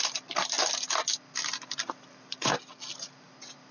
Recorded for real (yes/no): yes